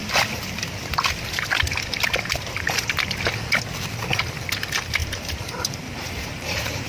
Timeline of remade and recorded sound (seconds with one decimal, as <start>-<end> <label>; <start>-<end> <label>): 0.0-5.0 recorded; 5.0-6.9 remade